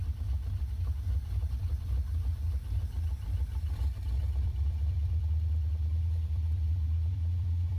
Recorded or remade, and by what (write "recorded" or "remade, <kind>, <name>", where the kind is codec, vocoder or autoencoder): remade, vocoder, BigVGAN v2